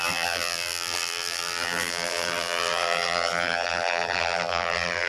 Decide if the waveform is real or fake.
fake